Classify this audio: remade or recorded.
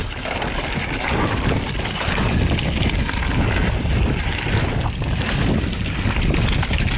recorded